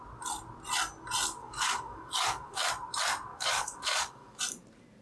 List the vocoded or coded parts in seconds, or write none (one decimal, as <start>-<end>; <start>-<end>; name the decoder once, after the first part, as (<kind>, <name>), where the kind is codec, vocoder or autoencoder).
1.4-2.7 (codec, DAC); 3.3-4.4